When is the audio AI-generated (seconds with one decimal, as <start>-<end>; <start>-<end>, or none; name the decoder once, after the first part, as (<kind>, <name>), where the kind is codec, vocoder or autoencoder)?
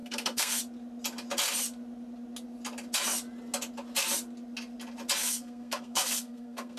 0.0-0.6 (codec, SNAC); 5.2-6.8